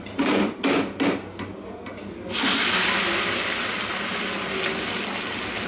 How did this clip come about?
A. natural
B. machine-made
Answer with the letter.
A